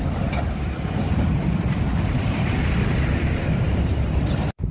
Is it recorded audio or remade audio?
remade